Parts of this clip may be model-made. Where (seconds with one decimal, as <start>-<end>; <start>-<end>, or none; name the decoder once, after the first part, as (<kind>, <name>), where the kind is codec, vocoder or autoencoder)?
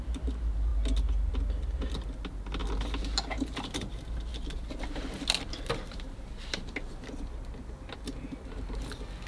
none